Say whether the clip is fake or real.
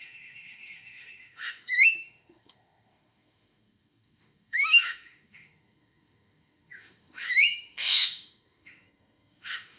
fake